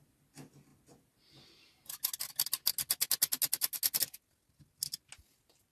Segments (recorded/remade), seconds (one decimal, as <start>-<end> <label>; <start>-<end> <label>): 0.0-5.7 recorded